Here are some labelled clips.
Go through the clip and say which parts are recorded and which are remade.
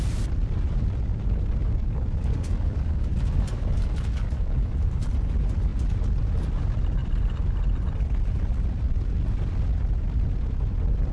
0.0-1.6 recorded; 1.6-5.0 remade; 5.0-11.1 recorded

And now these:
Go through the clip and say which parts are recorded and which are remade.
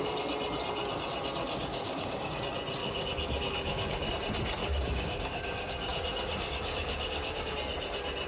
0.0-1.7 recorded; 1.7-2.4 remade; 2.4-2.8 recorded; 2.8-4.1 remade; 4.1-4.6 recorded; 4.6-7.5 remade; 7.5-8.3 recorded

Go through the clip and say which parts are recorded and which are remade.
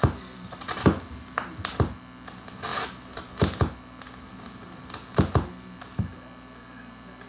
0.0-7.3 recorded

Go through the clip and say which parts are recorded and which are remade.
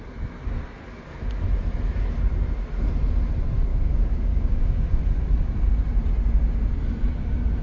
0.0-3.7 recorded; 3.7-5.0 remade; 5.0-7.6 recorded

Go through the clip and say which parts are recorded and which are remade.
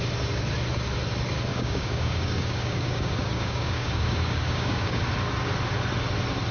0.0-1.5 recorded; 1.5-5.0 remade; 5.0-6.5 recorded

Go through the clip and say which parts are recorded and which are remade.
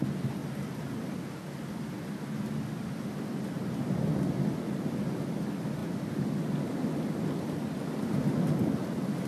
0.0-9.3 recorded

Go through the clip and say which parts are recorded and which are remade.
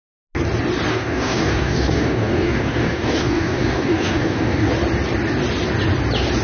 0.0-0.9 recorded; 0.9-4.7 remade; 4.7-6.4 recorded